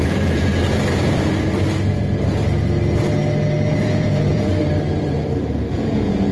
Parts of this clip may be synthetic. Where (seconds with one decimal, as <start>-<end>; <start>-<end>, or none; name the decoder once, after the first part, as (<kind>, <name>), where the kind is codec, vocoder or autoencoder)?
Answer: 0.0-0.5 (vocoder, Vocos); 3.8-4.5; 5.7-6.3